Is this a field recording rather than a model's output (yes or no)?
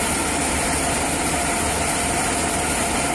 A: yes